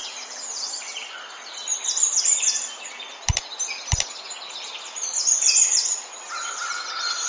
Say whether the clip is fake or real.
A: real